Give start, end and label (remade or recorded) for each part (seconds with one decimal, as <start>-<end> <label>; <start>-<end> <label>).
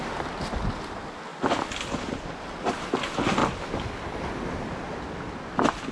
0.0-5.9 recorded